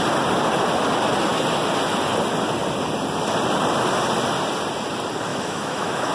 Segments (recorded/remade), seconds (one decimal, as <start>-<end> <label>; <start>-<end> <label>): 0.0-5.3 recorded; 5.3-6.1 remade